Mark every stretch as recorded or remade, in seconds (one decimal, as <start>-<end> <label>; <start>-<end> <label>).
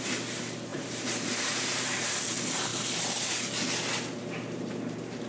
0.0-0.7 recorded; 0.7-2.2 remade; 2.2-2.7 recorded; 2.7-3.5 remade; 3.5-5.3 recorded